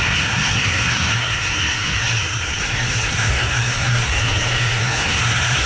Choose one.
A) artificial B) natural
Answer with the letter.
A